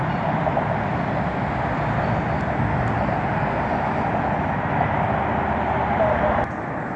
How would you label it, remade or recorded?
recorded